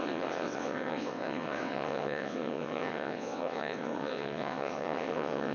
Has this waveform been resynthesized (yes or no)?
yes